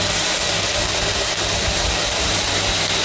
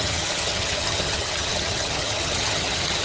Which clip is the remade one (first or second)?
second